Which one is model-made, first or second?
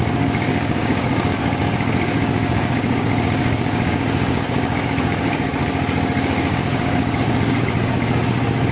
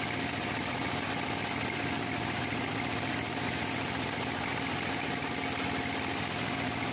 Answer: first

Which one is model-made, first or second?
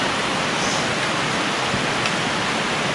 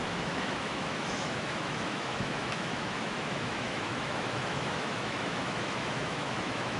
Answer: second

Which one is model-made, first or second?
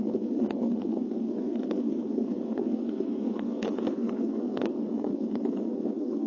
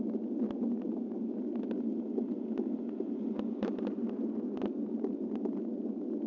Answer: first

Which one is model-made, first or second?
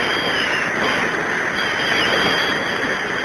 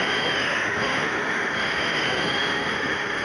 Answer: second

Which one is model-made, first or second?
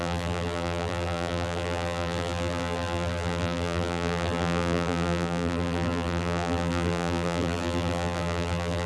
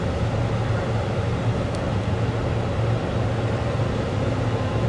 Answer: first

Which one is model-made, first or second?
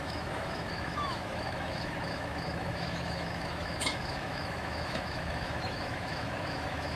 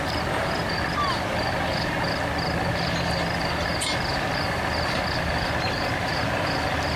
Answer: first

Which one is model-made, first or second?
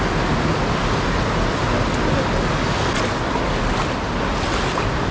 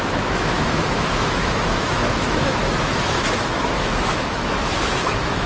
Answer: second